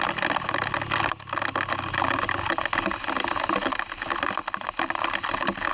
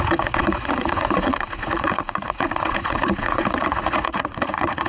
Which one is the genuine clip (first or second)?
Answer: first